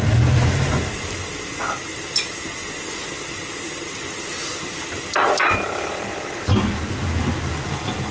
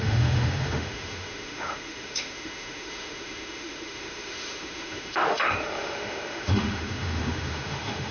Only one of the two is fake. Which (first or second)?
second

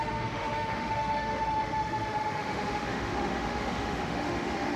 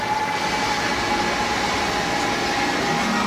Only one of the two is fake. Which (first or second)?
first